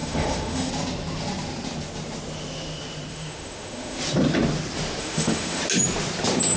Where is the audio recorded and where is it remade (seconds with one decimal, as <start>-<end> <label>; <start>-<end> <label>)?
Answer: 0.0-0.7 remade; 0.7-3.1 recorded; 3.1-4.0 remade; 4.0-5.0 recorded; 5.0-5.6 remade; 5.6-6.6 recorded